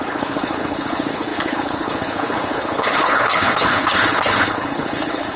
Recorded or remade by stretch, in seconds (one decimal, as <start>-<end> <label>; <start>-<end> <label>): 0.0-5.4 remade